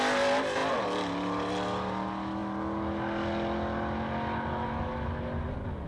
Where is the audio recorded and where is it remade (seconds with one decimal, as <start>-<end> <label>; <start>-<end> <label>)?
0.0-5.9 recorded